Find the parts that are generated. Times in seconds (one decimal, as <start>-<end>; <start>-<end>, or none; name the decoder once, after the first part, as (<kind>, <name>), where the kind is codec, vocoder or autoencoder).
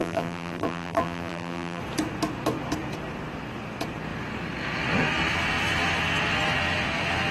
0.0-1.8 (vocoder, BigVGAN v2)